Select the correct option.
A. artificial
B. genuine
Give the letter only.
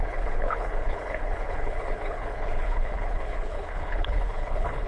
A